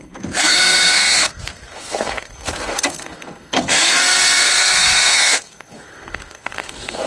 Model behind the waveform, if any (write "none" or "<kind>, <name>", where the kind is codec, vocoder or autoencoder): codec, SNAC